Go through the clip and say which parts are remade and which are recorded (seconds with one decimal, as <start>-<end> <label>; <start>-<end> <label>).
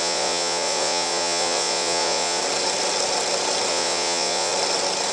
0.0-2.4 remade; 2.4-3.7 recorded; 3.7-4.5 remade; 4.5-5.1 recorded